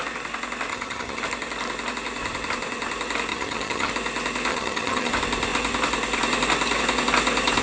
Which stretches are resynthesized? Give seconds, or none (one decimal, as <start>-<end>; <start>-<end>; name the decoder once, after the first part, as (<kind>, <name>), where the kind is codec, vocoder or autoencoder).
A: 0.7-1.2 (vocoder, HiFi-GAN); 3.3-3.9; 4.5-5.1